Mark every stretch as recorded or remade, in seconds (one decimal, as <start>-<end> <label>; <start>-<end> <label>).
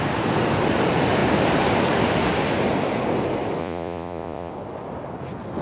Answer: 0.0-3.6 recorded; 3.6-4.5 remade; 4.5-5.6 recorded